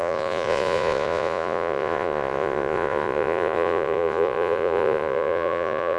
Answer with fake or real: fake